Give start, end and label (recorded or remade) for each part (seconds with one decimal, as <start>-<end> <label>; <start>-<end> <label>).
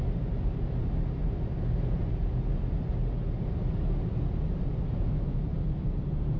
0.0-6.4 recorded